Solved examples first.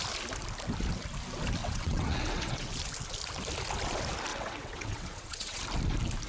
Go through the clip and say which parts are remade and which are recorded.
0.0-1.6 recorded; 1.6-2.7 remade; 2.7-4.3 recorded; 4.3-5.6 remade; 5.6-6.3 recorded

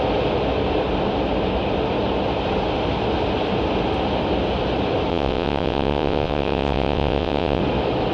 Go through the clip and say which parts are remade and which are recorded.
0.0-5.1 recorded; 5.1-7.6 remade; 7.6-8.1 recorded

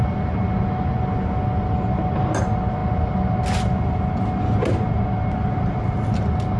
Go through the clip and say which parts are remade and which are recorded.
0.0-6.6 recorded